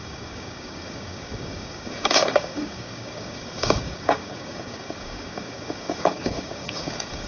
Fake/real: fake